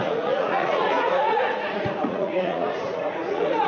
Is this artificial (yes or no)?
yes